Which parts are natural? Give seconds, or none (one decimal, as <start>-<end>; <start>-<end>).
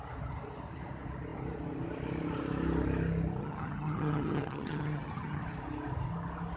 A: 0.0-3.4; 5.4-6.6